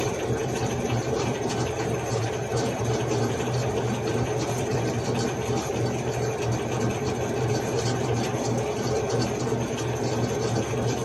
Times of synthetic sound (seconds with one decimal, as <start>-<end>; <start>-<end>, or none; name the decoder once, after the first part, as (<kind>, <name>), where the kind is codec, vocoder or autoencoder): 0.4-4.7 (vocoder, BigVGAN v2)